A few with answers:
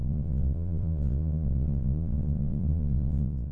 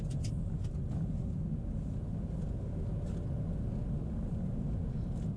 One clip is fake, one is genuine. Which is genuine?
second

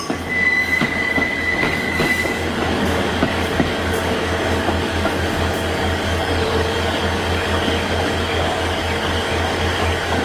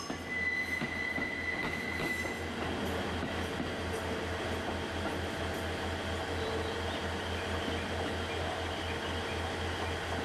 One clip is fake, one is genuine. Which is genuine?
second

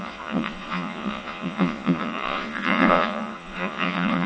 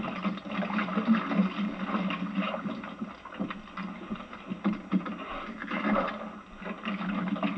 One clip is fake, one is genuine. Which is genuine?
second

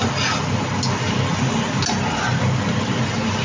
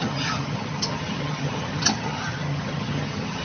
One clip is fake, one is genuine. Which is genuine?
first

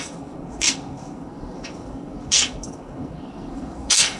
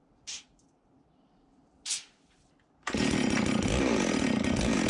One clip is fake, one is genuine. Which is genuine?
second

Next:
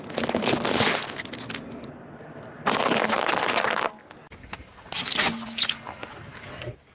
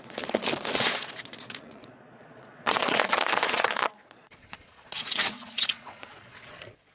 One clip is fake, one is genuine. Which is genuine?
first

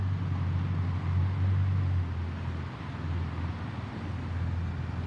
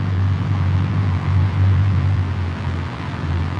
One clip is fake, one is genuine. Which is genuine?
first